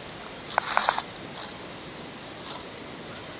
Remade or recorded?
recorded